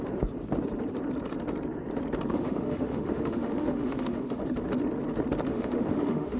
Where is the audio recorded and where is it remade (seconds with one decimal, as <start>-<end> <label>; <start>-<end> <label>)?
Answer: 0.0-2.3 recorded; 2.3-4.4 remade; 4.4-5.5 recorded; 5.5-6.4 remade